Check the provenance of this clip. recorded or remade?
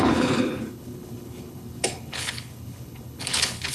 remade